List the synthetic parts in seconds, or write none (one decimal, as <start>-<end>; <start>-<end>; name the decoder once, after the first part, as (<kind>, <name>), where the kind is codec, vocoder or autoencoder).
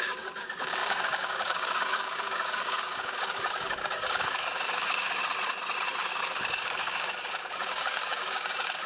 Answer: 0.0-5.2 (codec, DAC); 6.1-8.9